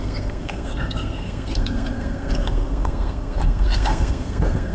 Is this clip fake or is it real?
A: fake